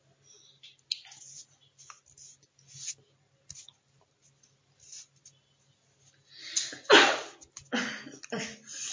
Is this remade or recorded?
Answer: recorded